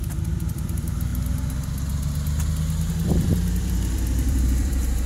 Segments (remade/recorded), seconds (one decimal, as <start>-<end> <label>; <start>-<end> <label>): 0.0-1.1 remade; 1.1-2.9 recorded; 2.9-5.1 remade

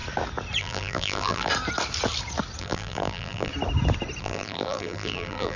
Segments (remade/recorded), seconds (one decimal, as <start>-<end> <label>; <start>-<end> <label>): 0.0-0.6 recorded; 0.6-1.5 remade; 1.5-2.6 recorded; 2.6-3.5 remade; 3.5-4.2 recorded; 4.2-5.6 remade

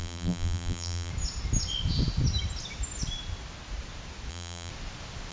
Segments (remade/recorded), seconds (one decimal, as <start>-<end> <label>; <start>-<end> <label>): 0.0-1.1 remade; 1.1-4.3 recorded; 4.3-4.7 remade; 4.7-5.3 recorded

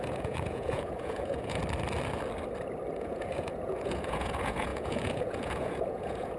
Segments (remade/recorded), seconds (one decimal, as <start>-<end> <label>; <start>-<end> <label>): 0.0-1.6 remade; 1.6-2.9 recorded; 2.9-6.4 remade